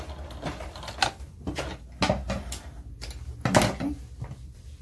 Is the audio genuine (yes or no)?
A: yes